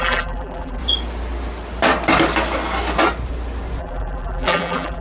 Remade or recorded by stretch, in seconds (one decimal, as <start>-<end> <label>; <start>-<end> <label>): 0.0-0.8 remade; 0.8-3.8 recorded; 3.8-5.0 remade